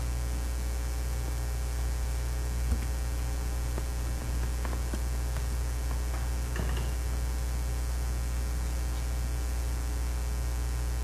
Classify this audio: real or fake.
real